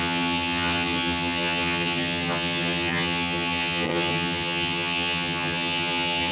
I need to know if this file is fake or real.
fake